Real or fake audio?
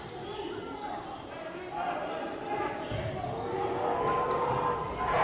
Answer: real